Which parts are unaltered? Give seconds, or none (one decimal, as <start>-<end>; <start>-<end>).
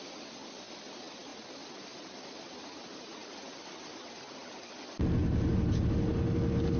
0.0-6.8